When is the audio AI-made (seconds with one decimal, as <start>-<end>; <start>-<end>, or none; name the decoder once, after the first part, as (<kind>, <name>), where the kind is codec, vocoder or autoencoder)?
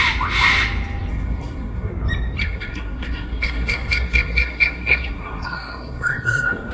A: 1.1-1.9 (codec, SNAC); 2.4-6.7